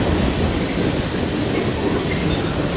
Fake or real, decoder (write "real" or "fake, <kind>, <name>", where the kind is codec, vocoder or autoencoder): real